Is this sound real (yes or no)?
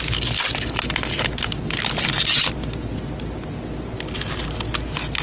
yes